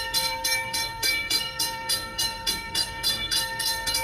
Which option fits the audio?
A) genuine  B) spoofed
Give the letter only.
B